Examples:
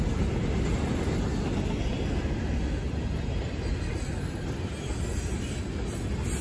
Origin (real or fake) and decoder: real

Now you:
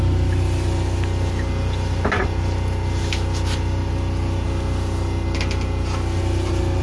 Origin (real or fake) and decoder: real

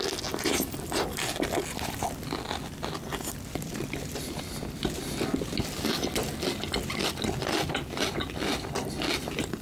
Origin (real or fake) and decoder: real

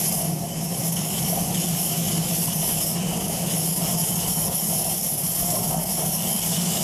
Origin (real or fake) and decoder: fake, codec, DAC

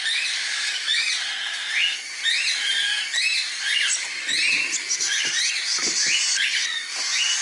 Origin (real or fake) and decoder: real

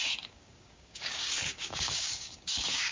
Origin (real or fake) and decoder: fake, codec, DAC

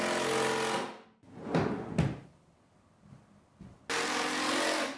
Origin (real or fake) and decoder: real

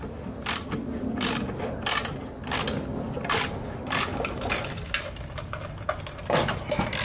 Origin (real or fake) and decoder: real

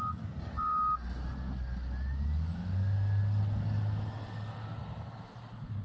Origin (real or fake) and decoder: real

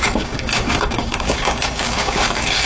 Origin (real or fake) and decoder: fake, codec, DAC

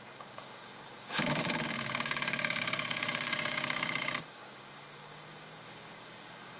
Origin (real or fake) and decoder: fake, codec, DAC